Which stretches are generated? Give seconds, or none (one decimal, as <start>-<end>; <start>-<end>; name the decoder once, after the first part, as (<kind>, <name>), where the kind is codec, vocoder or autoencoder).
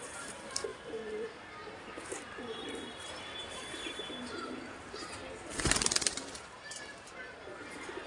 0.0-8.1 (vocoder, BigVGAN v2)